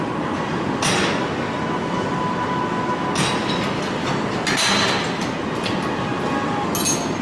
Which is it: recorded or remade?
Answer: recorded